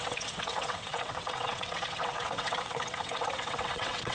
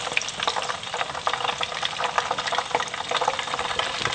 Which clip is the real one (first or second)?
second